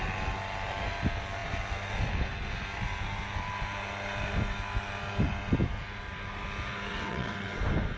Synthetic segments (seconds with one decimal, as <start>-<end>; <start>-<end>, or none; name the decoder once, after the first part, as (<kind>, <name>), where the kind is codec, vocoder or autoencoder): 6.9-7.6 (vocoder, WaveNeXt)